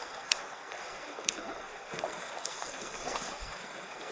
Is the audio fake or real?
fake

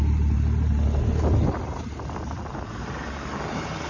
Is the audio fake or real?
real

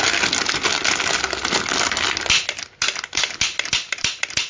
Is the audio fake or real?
real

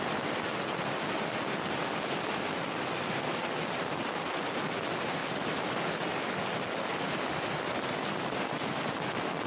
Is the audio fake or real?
real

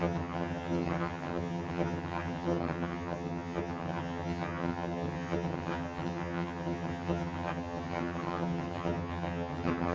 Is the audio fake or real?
fake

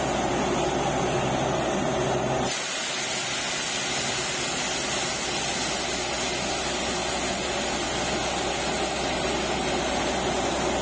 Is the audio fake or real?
real